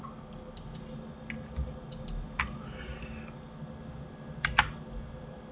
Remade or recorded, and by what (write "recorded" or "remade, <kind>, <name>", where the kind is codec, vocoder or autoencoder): recorded